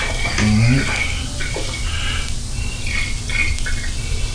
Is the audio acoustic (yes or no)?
yes